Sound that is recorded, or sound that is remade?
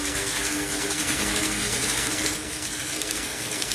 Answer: remade